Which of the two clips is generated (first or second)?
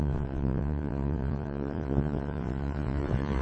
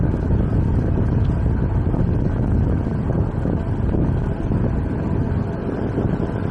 first